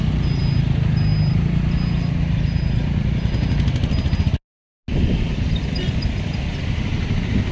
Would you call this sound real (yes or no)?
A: yes